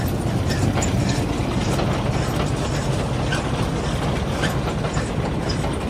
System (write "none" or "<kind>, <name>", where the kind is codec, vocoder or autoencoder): none